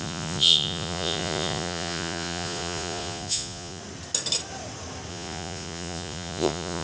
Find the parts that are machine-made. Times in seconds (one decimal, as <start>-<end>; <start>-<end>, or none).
0.0-3.8; 5.1-6.8